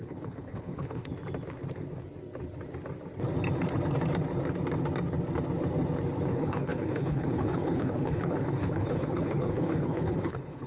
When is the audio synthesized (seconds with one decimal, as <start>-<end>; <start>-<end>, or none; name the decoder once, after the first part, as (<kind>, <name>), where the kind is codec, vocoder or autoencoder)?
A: 0.0-1.1 (codec, HILCodec); 6.3-10.7